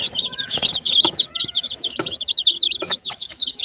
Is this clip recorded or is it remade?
remade